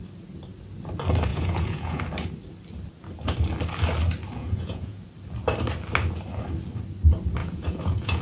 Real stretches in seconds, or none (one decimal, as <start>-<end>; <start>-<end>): 0.0-1.3; 2.0-4.4; 5.1-7.4